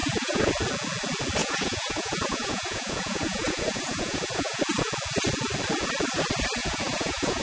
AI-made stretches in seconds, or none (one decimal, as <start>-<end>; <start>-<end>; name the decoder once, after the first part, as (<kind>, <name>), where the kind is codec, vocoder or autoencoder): 0.0-0.5 (vocoder, Vocos); 1.4-4.6; 6.6-7.4